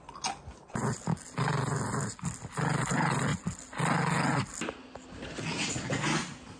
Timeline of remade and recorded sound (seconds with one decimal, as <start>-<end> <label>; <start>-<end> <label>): 0.0-6.6 recorded